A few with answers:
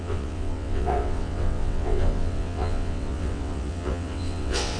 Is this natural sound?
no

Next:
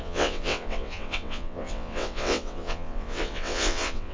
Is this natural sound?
no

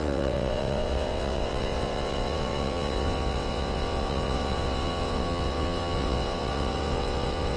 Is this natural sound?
no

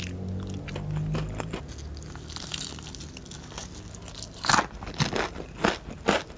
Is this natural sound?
yes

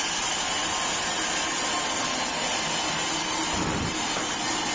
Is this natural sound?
yes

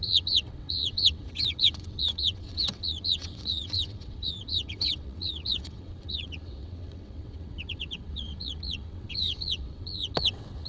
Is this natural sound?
no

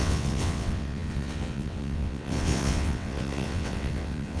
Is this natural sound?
no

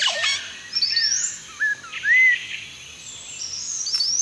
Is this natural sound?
yes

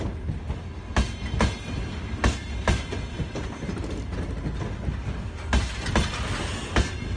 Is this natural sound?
yes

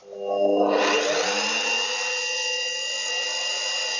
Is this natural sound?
yes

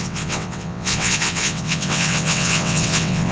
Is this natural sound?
no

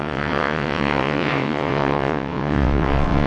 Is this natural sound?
no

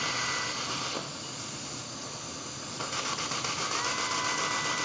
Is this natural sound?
yes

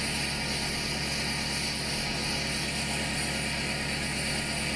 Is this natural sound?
yes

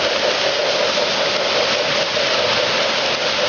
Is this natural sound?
yes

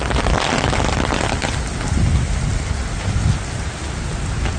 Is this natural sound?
yes